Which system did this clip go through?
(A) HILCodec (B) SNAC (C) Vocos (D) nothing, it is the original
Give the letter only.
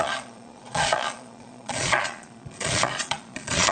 C